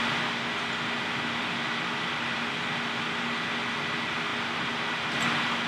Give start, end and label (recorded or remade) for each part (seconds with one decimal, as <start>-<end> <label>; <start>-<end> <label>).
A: 0.0-5.7 recorded